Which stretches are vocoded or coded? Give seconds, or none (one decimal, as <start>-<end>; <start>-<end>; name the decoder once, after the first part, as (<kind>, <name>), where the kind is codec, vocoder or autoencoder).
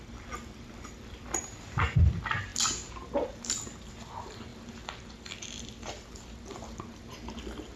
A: 0.0-7.8 (vocoder, BigVGAN v2)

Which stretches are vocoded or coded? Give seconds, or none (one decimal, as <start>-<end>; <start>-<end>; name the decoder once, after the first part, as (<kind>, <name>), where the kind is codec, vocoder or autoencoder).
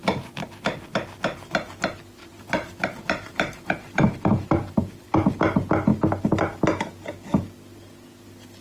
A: 0.0-0.8 (vocoder, BigVGAN v2); 2.2-5.1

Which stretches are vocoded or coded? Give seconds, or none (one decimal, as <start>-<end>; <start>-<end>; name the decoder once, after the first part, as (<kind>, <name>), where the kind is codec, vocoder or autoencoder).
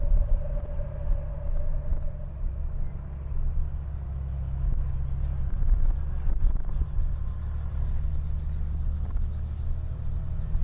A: none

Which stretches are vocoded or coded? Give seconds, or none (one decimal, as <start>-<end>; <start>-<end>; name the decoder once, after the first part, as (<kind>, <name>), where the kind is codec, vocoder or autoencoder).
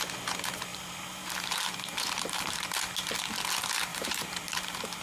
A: 0.7-2.6 (vocoder, BigVGAN v2); 3.9-5.0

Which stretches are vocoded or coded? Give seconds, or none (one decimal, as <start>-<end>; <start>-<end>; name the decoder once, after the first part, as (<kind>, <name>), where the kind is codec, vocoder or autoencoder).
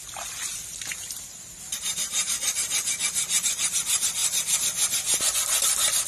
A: 0.9-4.2 (vocoder, BigVGAN v2); 5.2-6.1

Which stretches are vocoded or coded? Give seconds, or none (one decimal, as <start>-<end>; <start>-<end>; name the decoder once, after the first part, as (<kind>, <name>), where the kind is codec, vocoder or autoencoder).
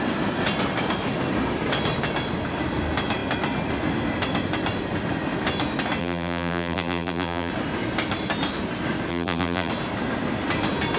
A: 6.0-7.5 (vocoder, BigVGAN v2); 9.1-9.7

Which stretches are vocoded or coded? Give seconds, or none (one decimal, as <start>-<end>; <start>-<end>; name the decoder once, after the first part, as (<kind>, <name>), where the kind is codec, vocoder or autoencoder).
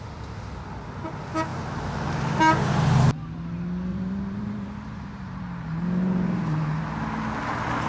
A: 1.5-2.4 (vocoder, BigVGAN v2); 3.9-5.4; 6.0-6.8